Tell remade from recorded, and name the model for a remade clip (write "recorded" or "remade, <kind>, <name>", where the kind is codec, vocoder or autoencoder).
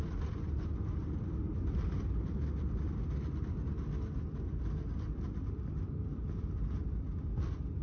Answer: recorded